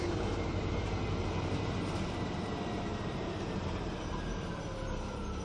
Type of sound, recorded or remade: remade